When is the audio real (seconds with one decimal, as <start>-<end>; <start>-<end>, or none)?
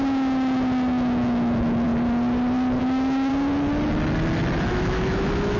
1.9-2.8; 3.3-4.7